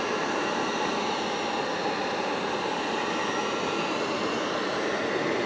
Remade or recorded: recorded